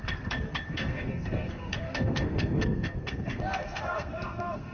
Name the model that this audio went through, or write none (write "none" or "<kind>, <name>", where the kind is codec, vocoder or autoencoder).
codec, SNAC